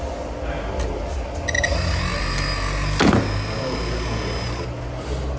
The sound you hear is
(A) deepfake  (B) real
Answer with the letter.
B